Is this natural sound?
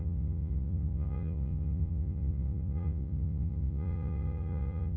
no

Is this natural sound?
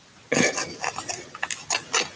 yes